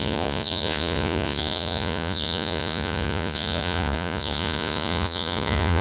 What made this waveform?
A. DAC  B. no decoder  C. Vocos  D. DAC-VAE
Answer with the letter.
C